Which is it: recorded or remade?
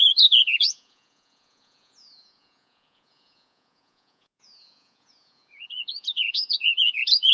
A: remade